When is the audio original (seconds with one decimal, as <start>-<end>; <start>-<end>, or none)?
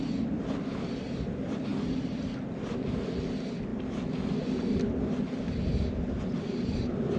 0.0-7.2